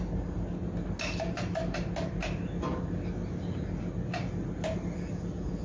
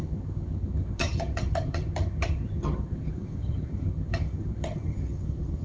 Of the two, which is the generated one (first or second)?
second